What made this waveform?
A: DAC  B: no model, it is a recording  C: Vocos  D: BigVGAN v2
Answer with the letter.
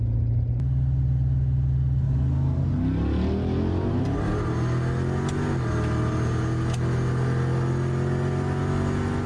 B